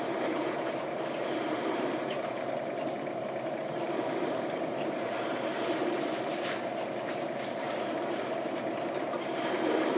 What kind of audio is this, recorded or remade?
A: remade